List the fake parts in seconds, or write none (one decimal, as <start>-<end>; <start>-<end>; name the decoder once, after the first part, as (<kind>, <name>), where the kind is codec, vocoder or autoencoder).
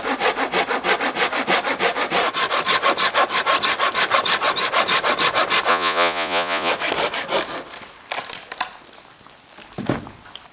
5.7-6.7 (vocoder, Vocos)